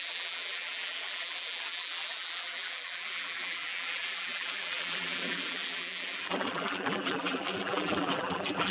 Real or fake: fake